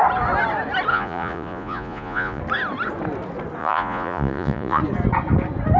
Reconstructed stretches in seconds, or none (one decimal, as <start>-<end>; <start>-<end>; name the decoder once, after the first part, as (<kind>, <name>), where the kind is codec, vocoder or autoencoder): 0.9-2.4 (vocoder, Vocos); 3.6-4.8